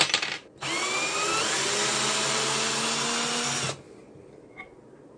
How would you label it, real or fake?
real